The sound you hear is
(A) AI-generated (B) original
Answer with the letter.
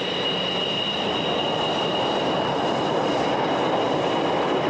B